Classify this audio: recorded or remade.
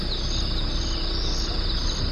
recorded